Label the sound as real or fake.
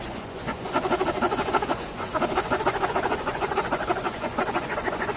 fake